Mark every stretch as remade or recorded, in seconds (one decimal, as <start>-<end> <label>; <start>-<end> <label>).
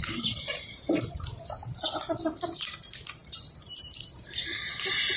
0.0-5.2 recorded